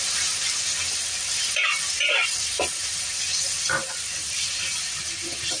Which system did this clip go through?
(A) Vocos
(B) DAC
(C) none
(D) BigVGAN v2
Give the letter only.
C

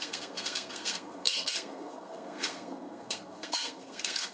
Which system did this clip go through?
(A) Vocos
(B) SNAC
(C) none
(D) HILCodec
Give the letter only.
B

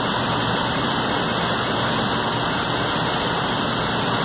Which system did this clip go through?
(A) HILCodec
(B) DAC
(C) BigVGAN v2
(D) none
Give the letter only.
D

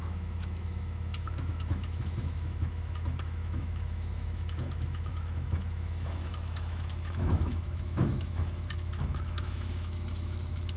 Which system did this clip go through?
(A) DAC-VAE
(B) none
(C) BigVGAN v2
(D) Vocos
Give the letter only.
A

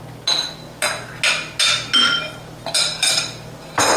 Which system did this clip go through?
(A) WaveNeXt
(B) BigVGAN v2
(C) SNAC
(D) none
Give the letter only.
D